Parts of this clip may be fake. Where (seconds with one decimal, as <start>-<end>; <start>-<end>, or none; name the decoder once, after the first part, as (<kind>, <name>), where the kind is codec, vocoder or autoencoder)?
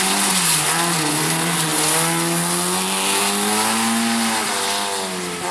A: none